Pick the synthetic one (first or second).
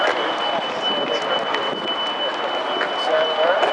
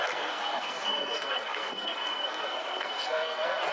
second